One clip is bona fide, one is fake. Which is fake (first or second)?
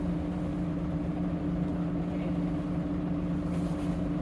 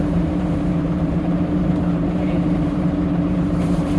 second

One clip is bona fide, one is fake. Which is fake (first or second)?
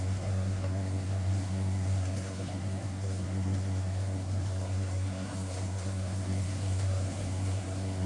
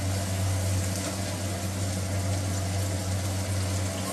first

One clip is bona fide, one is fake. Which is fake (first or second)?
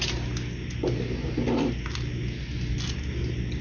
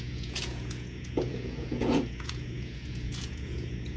second